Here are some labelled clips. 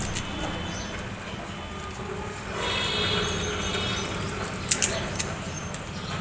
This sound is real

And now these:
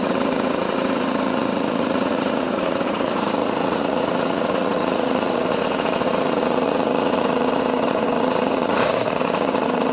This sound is fake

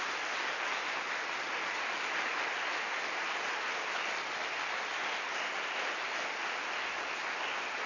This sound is real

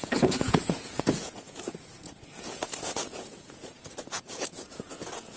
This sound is fake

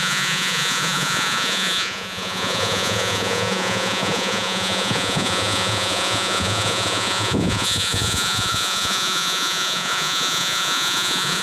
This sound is fake